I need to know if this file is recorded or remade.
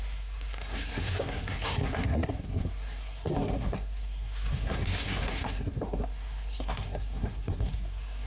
remade